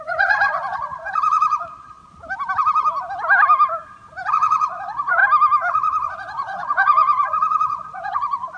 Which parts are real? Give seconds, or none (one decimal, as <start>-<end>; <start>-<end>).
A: 2.0-4.3; 5.2-5.7